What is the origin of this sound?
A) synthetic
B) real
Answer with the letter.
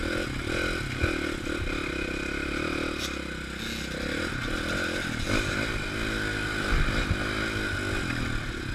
B